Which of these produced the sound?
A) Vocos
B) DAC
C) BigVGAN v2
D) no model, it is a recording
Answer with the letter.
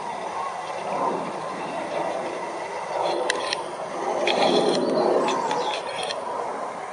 D